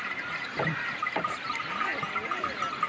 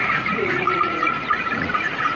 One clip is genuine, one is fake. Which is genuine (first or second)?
first